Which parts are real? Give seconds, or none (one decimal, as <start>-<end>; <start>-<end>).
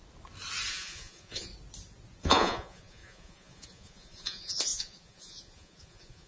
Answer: 0.0-0.7; 1.5-2.2